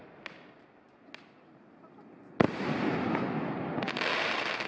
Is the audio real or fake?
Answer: real